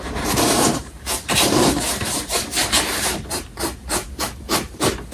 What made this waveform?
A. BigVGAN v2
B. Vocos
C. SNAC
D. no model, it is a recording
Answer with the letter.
A